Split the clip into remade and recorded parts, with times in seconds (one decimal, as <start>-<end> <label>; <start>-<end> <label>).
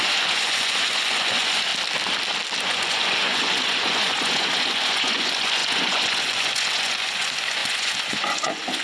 0.0-1.7 remade; 1.7-2.6 recorded; 2.6-8.8 remade